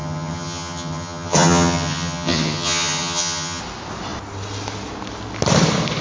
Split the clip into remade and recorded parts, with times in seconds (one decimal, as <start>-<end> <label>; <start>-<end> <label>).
0.0-3.6 remade; 3.6-6.0 recorded